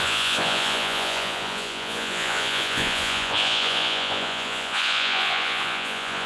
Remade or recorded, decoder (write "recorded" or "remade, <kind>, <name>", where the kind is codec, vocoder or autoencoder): remade, vocoder, Vocos